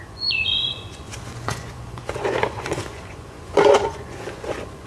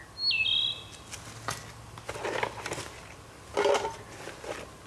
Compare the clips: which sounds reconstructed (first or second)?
first